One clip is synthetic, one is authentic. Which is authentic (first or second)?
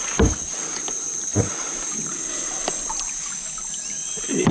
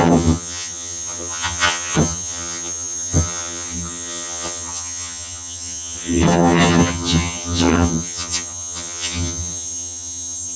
first